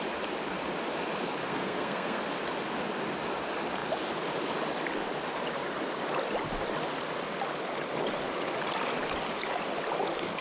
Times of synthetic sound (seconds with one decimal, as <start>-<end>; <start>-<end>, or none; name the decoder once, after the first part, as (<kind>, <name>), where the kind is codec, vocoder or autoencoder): 1.5-2.2 (codec, SNAC)